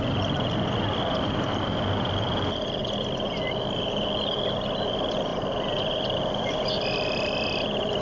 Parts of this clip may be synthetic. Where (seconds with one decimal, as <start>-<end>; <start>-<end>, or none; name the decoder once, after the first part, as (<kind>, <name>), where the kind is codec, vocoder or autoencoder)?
0.0-5.3 (vocoder, BigVGAN v2); 5.8-8.0